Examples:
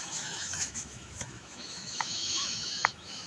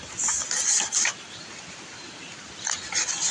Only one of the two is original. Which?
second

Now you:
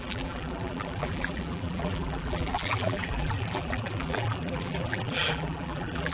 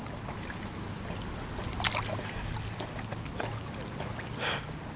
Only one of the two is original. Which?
second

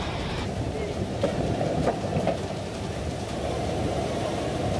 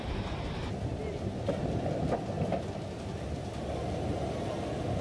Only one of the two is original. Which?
second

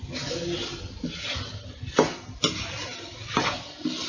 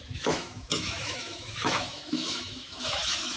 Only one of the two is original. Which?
first